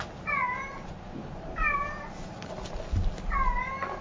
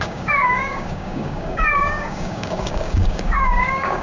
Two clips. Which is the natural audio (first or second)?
first